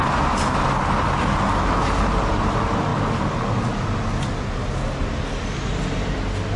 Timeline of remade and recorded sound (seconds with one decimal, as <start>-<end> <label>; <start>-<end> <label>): 0.0-6.6 recorded